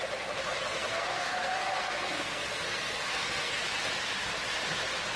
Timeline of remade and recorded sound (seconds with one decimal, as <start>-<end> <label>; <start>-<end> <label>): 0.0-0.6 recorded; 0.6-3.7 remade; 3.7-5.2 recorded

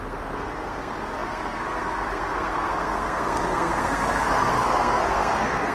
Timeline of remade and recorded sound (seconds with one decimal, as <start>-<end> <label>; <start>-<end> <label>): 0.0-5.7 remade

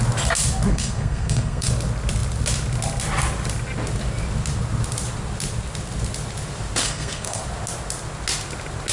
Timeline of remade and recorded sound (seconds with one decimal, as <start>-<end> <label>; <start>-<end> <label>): 0.0-0.7 recorded; 0.7-1.7 remade; 1.7-6.8 recorded; 6.8-7.4 remade; 7.4-8.9 recorded

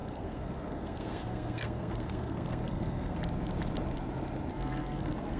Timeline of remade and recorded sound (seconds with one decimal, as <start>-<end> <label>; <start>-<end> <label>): 0.0-3.2 remade; 3.2-4.5 recorded; 4.5-5.4 remade

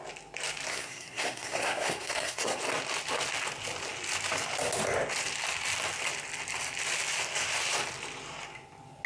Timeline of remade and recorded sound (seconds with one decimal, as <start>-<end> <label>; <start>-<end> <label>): 0.0-0.7 recorded; 0.7-2.6 remade; 2.6-9.1 recorded

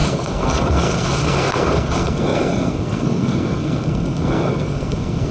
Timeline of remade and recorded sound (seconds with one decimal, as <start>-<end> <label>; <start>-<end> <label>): 0.0-5.3 remade

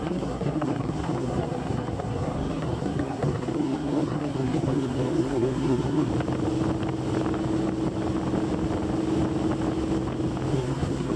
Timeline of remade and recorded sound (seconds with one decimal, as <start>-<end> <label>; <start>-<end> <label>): 0.0-6.1 remade; 6.1-10.5 recorded; 10.5-11.2 remade

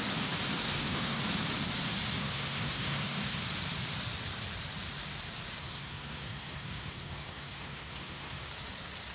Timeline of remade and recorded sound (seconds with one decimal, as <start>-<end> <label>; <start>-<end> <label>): 0.0-0.6 recorded; 0.6-1.2 remade; 1.2-2.2 recorded; 2.2-3.4 remade; 3.4-5.6 recorded; 5.6-8.5 remade; 8.5-9.1 recorded